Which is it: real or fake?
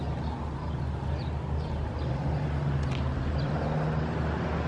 real